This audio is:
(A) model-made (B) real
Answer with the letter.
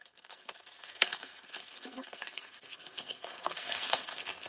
A